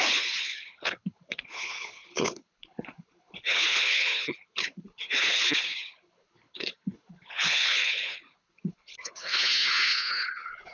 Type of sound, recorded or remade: remade